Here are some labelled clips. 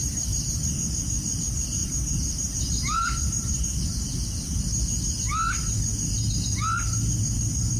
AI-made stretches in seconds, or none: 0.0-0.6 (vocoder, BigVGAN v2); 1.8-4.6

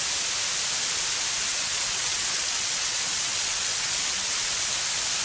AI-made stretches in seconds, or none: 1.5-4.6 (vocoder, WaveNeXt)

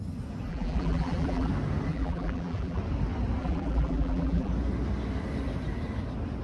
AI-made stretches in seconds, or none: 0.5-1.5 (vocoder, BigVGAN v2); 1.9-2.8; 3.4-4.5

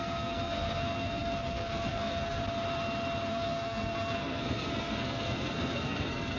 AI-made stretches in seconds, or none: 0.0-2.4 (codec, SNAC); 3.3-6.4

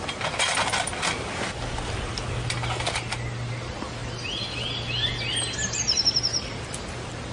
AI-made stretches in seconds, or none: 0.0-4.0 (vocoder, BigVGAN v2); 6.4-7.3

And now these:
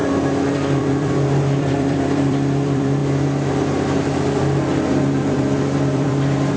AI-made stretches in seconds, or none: 0.5-3.0 (vocoder, BigVGAN v2); 5.2-6.6

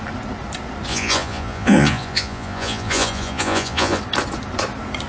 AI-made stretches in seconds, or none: 0.9-4.0 (vocoder, Vocos)

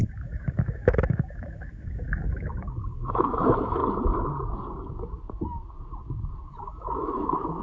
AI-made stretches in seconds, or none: 0.0-3.8 (autoencoder, DAC-VAE); 6.5-7.6